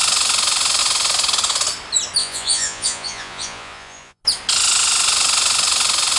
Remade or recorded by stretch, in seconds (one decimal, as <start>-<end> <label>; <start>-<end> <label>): 0.0-2.2 recorded; 2.2-4.2 remade; 4.2-6.2 recorded